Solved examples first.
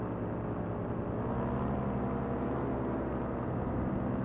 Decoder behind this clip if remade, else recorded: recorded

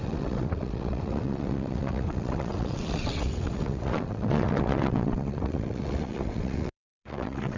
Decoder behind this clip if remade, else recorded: remade, vocoder, WaveNeXt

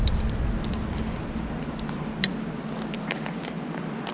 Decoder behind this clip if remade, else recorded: recorded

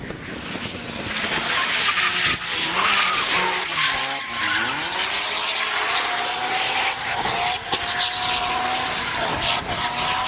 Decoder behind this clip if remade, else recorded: recorded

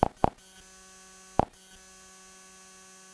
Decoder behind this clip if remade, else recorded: recorded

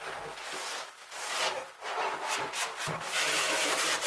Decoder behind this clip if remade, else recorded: recorded